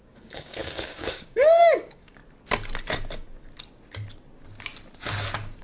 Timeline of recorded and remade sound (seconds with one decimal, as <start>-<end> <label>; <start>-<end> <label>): 0.0-2.2 remade; 2.2-5.6 recorded